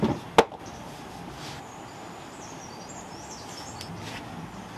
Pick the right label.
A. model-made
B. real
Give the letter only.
B